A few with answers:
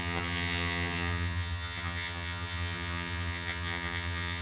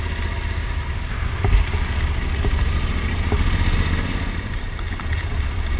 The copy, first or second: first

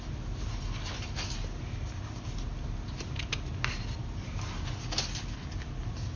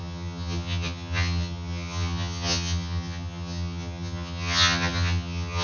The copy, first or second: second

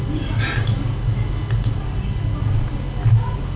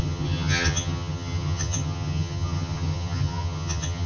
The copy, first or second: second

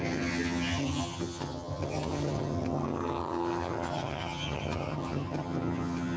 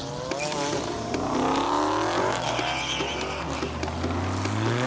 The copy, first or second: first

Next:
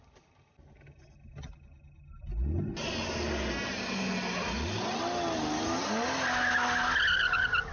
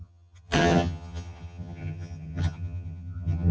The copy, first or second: second